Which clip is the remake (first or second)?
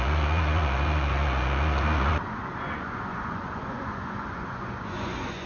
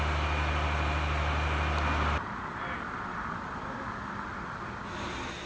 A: first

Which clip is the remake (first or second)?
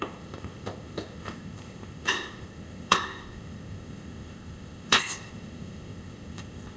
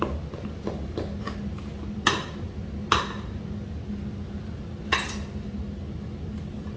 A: first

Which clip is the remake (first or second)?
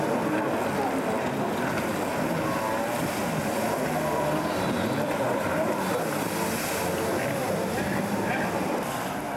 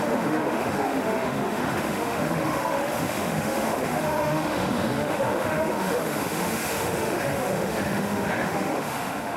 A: second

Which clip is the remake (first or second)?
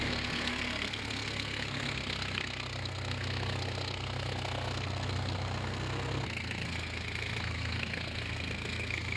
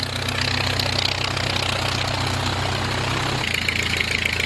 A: first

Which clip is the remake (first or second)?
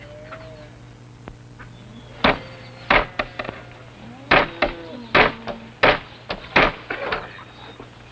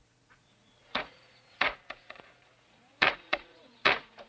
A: second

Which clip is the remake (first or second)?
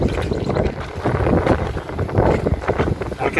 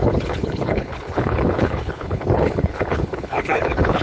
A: second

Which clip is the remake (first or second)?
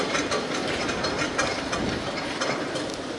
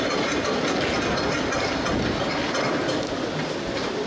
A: first